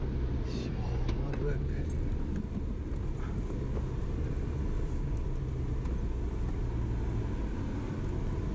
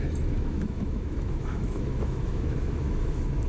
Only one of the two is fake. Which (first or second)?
second